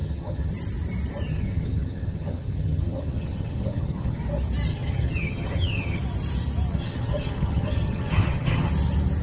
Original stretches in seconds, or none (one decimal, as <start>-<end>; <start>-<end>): 0.5-1.3; 4.2-4.7; 6.0-6.7; 8.7-9.2